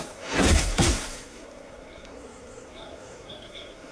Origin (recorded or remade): remade